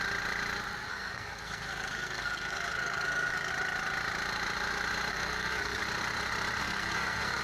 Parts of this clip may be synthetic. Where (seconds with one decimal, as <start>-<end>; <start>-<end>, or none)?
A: 0.9-3.5; 5.1-5.8; 6.6-7.4